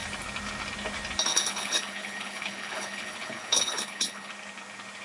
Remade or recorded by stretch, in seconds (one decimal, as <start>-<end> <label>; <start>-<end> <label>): 0.0-1.3 recorded; 1.3-4.3 remade; 4.3-5.0 recorded